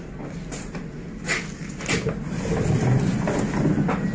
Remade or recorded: recorded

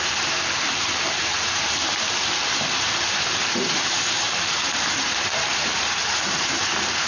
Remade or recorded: remade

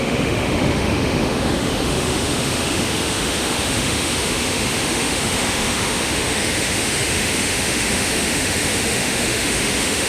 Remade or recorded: remade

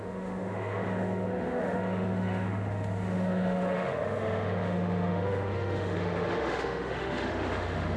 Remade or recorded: remade